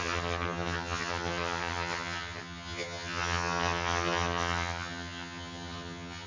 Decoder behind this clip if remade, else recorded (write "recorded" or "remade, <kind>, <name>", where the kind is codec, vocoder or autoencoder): remade, vocoder, HiFi-GAN